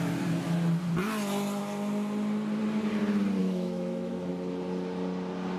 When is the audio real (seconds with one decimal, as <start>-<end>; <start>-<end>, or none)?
0.0-3.4; 4.3-5.6